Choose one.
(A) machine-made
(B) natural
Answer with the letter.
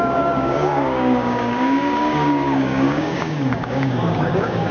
A